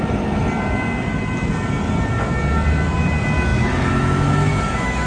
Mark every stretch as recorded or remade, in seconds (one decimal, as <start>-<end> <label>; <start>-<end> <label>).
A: 0.0-3.5 recorded; 3.5-5.1 remade

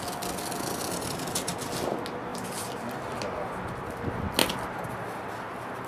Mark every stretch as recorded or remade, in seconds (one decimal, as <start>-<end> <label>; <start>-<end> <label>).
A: 0.0-5.9 recorded

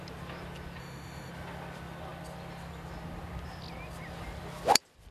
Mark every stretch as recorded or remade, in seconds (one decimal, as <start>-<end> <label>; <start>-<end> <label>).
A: 0.0-0.8 recorded; 0.8-1.3 remade; 1.3-5.1 recorded

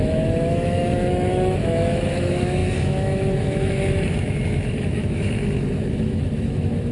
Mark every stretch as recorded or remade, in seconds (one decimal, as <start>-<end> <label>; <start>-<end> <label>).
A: 0.0-6.9 remade